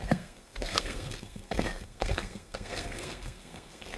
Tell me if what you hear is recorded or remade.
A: remade